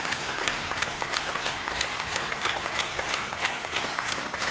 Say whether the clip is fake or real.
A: fake